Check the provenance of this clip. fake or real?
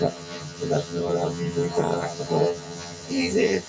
fake